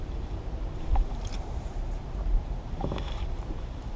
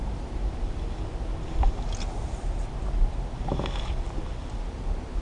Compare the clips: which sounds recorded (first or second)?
second